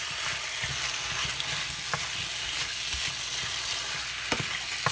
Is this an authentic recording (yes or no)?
yes